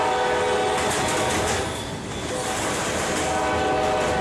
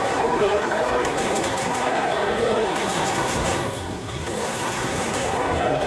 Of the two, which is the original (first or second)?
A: first